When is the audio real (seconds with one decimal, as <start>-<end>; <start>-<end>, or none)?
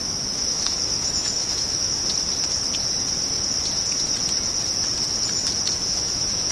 2.0-5.9